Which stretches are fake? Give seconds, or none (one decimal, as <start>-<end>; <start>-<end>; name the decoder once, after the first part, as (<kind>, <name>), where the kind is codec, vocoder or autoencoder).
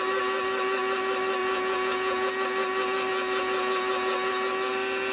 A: 1.4-2.3 (vocoder, Vocos); 3.1-4.3